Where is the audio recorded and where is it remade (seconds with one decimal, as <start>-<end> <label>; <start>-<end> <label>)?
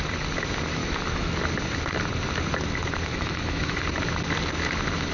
0.0-0.8 recorded; 0.8-1.4 remade; 1.4-3.1 recorded; 3.1-3.8 remade; 3.8-5.1 recorded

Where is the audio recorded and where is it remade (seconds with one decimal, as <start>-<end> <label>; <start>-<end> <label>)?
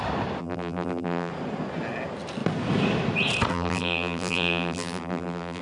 0.0-0.4 recorded; 0.4-1.3 remade; 1.3-3.5 recorded; 3.5-5.6 remade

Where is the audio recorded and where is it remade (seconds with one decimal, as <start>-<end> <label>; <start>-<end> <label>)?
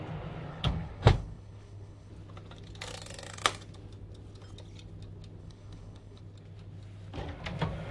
0.0-0.5 recorded; 0.5-2.1 remade; 2.1-5.4 recorded; 5.4-6.2 remade; 6.2-7.9 recorded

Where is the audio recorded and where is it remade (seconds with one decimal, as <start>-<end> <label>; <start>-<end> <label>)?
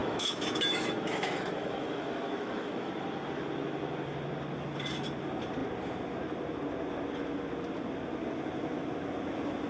0.0-2.9 remade; 2.9-9.7 recorded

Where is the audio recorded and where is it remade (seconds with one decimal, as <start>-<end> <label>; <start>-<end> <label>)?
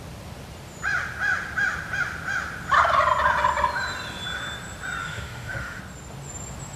0.0-5.0 recorded; 5.0-5.8 remade; 5.8-6.8 recorded